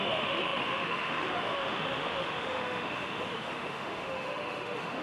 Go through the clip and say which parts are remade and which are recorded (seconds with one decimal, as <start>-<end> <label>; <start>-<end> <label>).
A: 0.0-5.0 remade